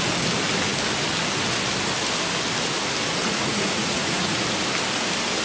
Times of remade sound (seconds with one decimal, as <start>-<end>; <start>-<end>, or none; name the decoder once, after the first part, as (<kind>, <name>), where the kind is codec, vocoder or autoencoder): 3.2-4.4 (vocoder, Vocos)